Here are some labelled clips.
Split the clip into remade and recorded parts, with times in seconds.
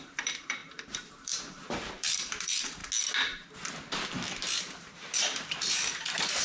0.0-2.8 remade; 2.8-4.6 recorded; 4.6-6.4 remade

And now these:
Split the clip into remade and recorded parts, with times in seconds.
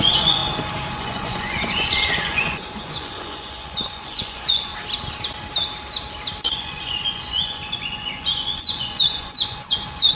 0.0-0.4 remade; 0.4-0.9 recorded; 0.9-4.7 remade; 4.7-6.4 recorded; 6.4-10.1 remade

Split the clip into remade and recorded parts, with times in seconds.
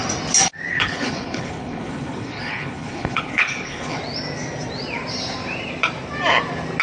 0.0-0.7 recorded; 0.7-4.0 remade; 4.0-6.8 recorded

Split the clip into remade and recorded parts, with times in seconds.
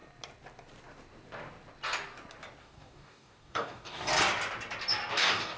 0.0-2.6 recorded; 2.6-4.1 remade; 4.1-5.1 recorded; 5.1-5.6 remade